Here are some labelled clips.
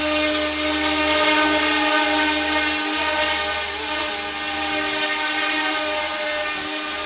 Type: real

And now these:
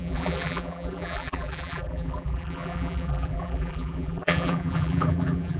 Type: fake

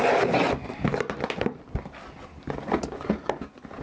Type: real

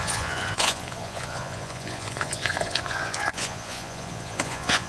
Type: fake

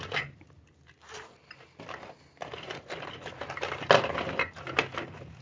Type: real